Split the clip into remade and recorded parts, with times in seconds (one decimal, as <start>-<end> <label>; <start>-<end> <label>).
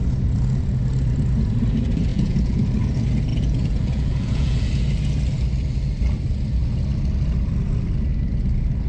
0.0-2.1 recorded; 2.1-2.7 remade; 2.7-3.3 recorded; 3.3-4.7 remade; 4.7-8.9 recorded